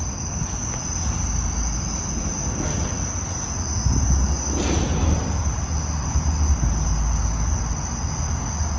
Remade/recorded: recorded